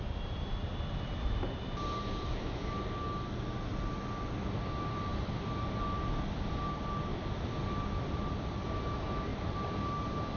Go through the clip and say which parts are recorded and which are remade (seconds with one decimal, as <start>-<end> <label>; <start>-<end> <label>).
0.0-7.1 recorded; 7.1-8.7 remade; 8.7-10.4 recorded